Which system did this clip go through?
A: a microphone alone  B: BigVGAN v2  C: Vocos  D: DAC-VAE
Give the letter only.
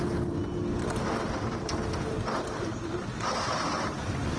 B